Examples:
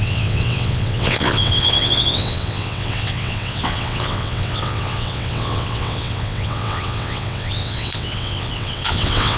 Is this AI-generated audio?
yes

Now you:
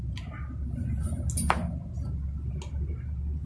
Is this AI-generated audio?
no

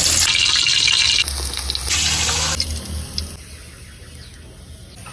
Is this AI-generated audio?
no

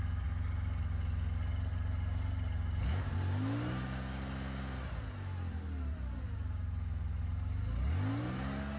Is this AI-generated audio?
no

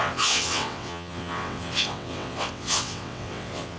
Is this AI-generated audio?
yes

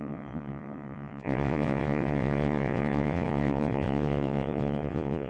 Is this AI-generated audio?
yes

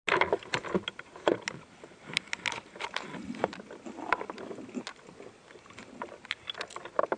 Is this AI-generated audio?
no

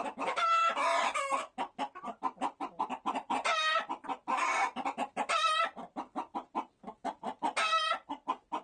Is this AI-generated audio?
no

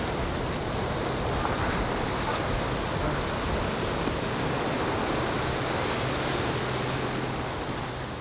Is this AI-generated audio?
no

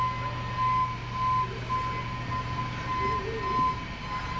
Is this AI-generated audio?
no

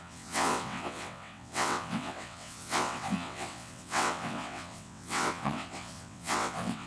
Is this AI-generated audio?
yes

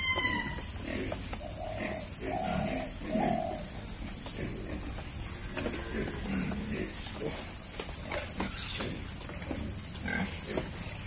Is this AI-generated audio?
no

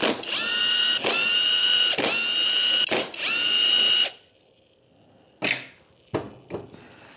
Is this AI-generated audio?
no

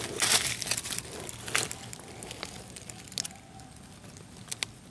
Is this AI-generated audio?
no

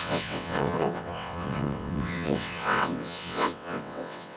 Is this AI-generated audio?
yes